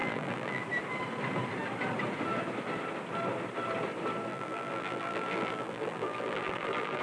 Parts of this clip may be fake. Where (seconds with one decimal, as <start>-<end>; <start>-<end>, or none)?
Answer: 0.0-0.6; 4.3-7.0